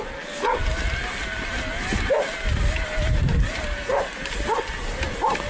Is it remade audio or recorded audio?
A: recorded